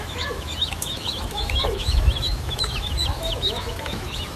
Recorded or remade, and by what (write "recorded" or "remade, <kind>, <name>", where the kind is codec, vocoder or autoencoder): remade, autoencoder, DAC-VAE